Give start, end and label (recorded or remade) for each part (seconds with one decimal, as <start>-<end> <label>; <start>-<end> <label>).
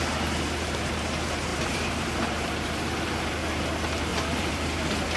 0.0-1.5 recorded; 1.5-2.8 remade; 2.8-4.1 recorded; 4.1-5.2 remade